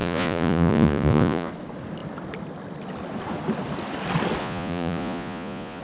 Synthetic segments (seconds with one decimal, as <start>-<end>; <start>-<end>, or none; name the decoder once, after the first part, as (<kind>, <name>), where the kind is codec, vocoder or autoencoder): 0.0-1.5 (vocoder, Vocos); 4.4-5.8